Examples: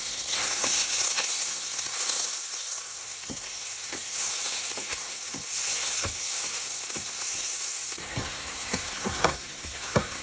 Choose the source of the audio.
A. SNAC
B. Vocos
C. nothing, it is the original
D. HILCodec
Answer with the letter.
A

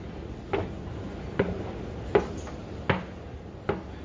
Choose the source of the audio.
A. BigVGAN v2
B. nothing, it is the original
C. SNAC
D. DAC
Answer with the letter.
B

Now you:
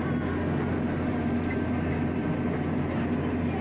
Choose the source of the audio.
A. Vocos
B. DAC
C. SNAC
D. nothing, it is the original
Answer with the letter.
D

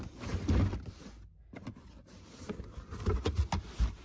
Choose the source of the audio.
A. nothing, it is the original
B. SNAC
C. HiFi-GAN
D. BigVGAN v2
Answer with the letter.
A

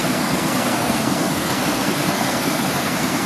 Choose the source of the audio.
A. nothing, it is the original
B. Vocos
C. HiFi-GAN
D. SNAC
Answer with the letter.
D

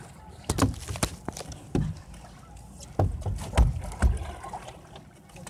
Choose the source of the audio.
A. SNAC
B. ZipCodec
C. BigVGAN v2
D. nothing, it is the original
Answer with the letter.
D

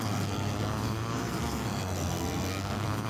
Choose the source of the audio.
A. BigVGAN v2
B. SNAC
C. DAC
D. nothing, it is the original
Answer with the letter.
B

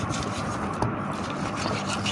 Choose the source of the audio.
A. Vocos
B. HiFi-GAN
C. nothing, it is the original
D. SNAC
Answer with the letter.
C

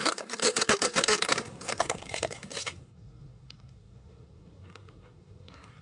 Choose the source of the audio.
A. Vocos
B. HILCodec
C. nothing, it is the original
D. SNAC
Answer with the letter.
D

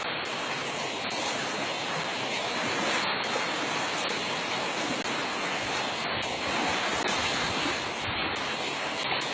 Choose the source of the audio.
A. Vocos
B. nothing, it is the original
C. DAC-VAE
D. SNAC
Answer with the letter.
B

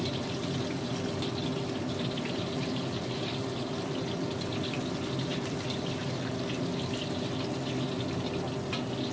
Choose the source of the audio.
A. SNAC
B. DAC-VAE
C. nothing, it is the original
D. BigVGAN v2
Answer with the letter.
C